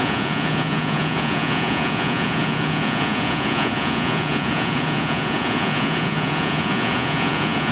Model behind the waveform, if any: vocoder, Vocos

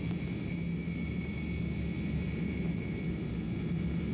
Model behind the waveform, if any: none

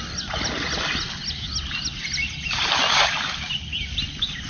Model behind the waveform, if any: none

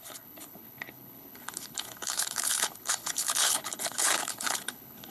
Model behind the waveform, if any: codec, HILCodec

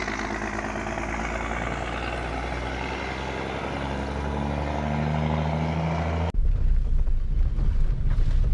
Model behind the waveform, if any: none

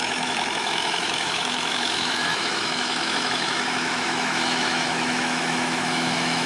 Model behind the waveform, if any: autoencoder, DAC-VAE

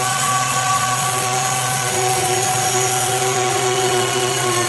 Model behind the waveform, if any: vocoder, Vocos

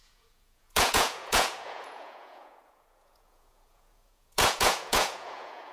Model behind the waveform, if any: vocoder, Vocos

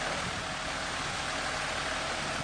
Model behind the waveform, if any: none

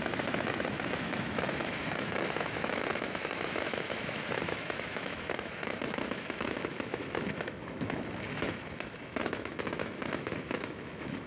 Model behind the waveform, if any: autoencoder, DAC-VAE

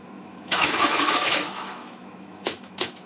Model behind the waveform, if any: autoencoder, DAC-VAE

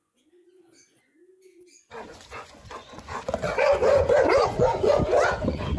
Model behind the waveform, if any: vocoder, Vocos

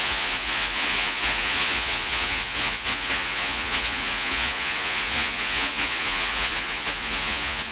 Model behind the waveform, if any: vocoder, Vocos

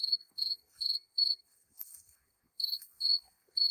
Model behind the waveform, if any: codec, SNAC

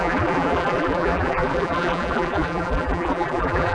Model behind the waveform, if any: vocoder, BigVGAN v2